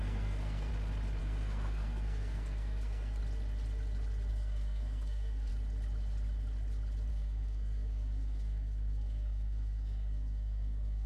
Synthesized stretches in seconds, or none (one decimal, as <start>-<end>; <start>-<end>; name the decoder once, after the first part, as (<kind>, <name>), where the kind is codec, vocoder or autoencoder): 0.0-0.7 (codec, SNAC); 1.2-3.2; 4.3-5.5; 7.1-11.1